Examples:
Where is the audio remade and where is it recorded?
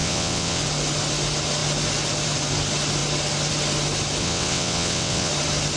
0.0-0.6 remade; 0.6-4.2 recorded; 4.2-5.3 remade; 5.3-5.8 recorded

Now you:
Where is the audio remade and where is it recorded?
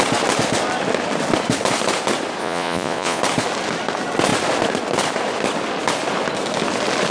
0.0-2.4 recorded; 2.4-3.2 remade; 3.2-7.1 recorded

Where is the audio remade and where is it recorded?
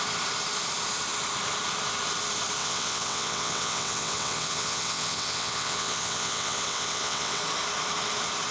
0.0-2.6 recorded; 2.6-7.4 remade; 7.4-8.5 recorded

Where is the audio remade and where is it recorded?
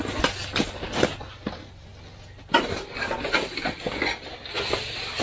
0.0-5.2 recorded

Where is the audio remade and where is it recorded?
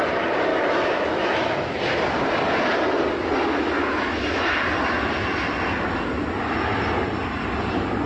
0.0-0.5 recorded; 0.5-1.8 remade; 1.8-3.8 recorded; 3.8-4.4 remade; 4.4-8.1 recorded